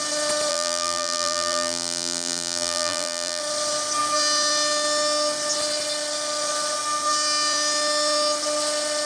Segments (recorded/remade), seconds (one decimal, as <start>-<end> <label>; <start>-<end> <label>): 0.0-0.5 recorded; 0.5-3.4 remade; 3.4-9.1 recorded